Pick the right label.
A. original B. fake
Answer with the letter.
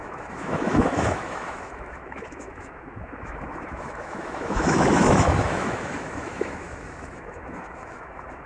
B